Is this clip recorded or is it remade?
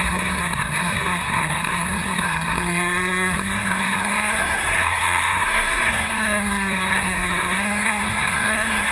remade